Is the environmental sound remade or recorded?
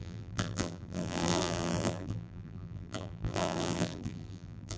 remade